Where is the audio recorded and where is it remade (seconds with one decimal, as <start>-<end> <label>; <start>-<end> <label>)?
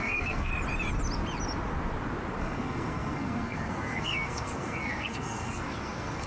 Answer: 0.0-0.5 remade; 0.5-2.4 recorded; 2.4-6.3 remade